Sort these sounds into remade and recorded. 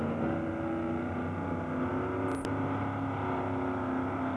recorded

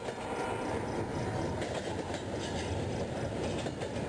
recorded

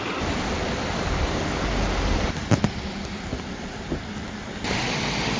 recorded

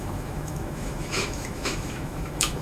remade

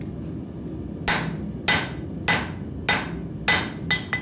recorded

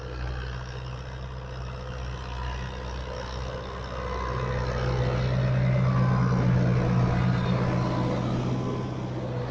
recorded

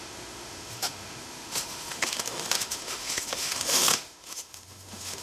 remade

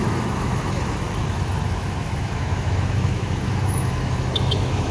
remade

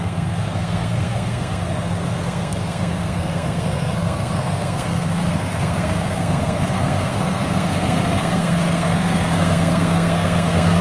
remade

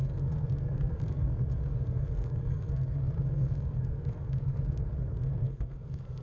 remade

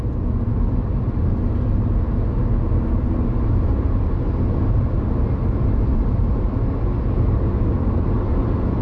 recorded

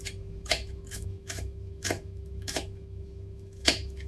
remade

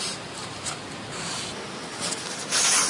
recorded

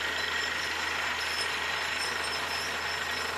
recorded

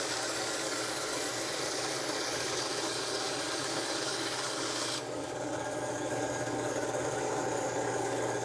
remade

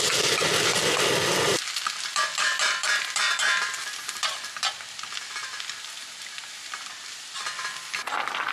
remade